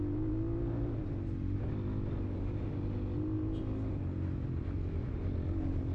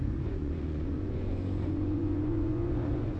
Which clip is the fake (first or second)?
second